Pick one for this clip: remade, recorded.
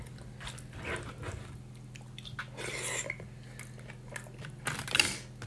recorded